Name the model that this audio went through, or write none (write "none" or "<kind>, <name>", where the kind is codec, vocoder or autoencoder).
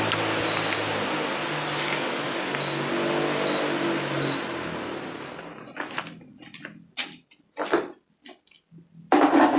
none